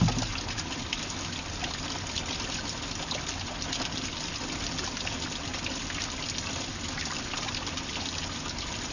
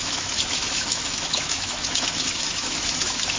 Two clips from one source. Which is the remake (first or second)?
second